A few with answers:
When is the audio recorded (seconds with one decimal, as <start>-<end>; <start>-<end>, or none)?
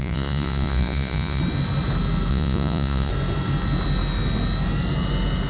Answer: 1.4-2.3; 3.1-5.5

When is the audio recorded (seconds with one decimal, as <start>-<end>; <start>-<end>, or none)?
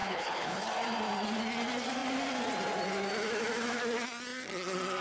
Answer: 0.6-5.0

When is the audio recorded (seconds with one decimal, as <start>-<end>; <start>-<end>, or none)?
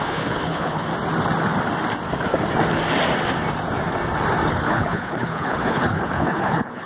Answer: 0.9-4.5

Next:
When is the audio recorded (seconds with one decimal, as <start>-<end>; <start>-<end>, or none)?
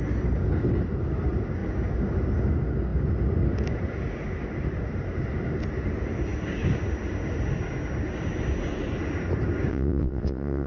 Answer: 0.0-9.7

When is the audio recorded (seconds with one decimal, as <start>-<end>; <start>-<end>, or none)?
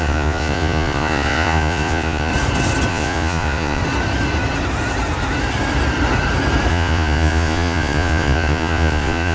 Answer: 2.3-2.9; 3.8-6.7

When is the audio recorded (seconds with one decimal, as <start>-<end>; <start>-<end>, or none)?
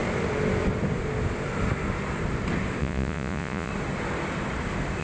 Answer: 0.0-2.8; 3.7-5.0